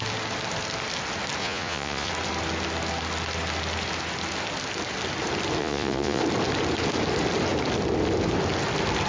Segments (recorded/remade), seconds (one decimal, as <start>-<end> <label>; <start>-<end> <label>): 0.0-1.4 recorded; 1.4-2.1 remade; 2.1-5.6 recorded; 5.6-6.2 remade; 6.2-9.1 recorded